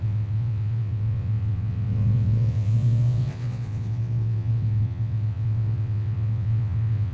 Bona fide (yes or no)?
no